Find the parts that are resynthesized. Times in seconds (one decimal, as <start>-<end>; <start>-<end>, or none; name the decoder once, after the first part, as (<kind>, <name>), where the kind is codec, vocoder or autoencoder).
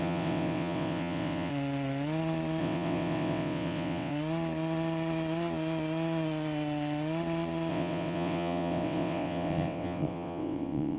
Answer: 0.0-1.5 (vocoder, WaveNeXt); 2.6-4.1; 7.7-11.0